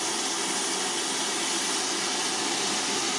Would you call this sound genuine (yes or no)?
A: yes